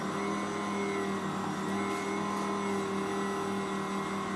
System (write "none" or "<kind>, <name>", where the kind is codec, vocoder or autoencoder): none